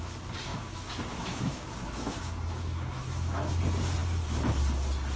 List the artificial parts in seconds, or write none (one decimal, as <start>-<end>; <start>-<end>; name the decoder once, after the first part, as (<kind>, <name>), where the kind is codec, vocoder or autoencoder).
0.5-3.6 (autoencoder, DAC-VAE)